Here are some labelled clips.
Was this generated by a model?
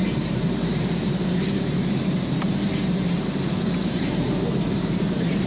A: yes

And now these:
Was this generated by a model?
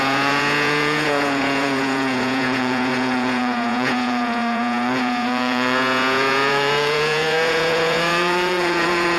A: yes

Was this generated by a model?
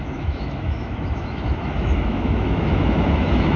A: yes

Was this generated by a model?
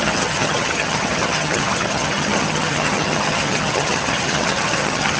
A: yes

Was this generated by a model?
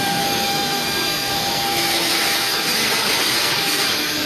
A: yes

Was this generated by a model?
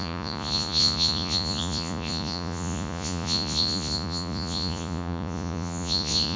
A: yes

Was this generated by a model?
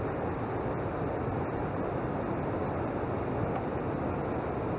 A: no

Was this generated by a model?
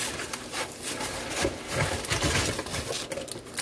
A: no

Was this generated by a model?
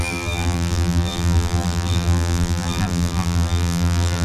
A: yes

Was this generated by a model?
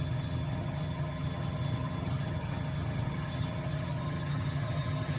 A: yes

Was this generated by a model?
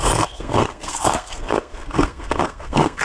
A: yes